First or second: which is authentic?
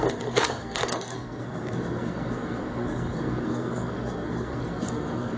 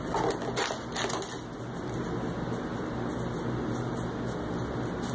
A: second